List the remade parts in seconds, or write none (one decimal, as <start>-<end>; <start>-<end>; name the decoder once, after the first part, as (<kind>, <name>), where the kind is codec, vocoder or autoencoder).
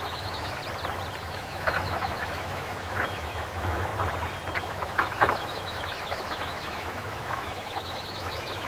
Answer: 0.0-0.6 (autoencoder, DAC-VAE); 1.2-3.9; 4.6-8.7